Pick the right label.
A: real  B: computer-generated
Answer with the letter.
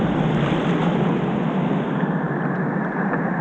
A